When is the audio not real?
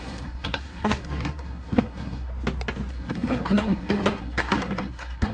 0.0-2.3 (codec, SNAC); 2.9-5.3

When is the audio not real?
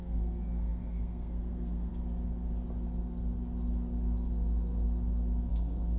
0.0-1.9 (codec, SNAC); 5.5-6.0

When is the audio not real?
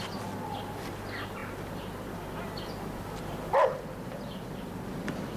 none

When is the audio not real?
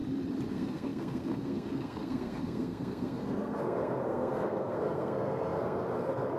0.5-6.4 (codec, SNAC)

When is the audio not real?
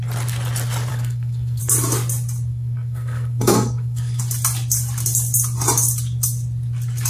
0.9-1.6 (codec, SNAC); 2.5-4.2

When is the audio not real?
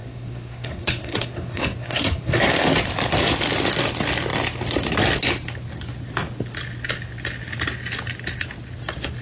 0.0-2.5 (codec, SNAC)